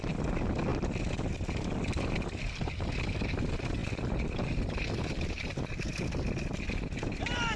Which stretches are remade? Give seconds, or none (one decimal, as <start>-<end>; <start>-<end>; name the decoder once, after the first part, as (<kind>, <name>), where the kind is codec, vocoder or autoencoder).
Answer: none